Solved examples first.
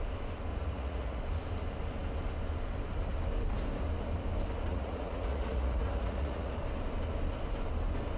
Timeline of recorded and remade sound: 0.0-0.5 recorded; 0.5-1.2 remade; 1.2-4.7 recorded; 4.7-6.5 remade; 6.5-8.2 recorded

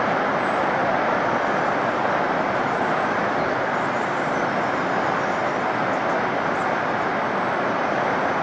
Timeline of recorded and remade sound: 0.0-8.4 recorded

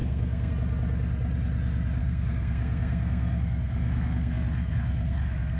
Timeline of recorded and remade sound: 0.0-0.5 remade; 0.5-2.0 recorded; 2.0-5.6 remade